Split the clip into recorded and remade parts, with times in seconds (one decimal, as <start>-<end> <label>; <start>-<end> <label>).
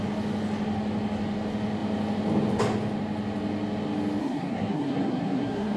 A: 0.0-4.2 recorded; 4.2-5.8 remade